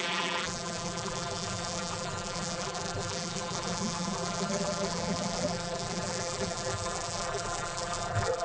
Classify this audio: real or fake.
fake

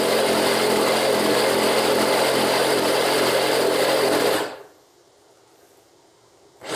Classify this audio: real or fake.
real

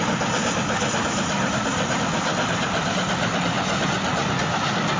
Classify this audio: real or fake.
real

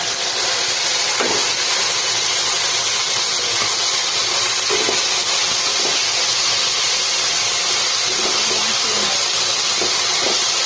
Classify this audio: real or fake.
real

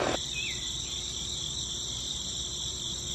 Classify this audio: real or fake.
fake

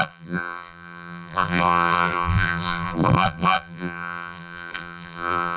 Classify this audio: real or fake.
fake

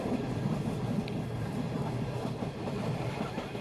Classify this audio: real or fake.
fake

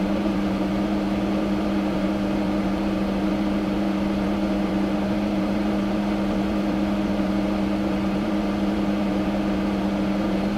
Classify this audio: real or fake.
fake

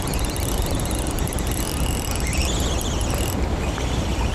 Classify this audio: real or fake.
fake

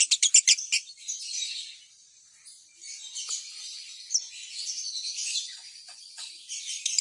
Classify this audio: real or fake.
real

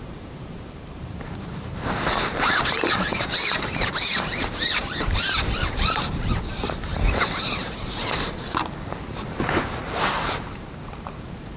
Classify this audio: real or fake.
fake